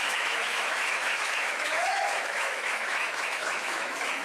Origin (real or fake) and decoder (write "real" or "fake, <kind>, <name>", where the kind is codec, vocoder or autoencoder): fake, autoencoder, DAC-VAE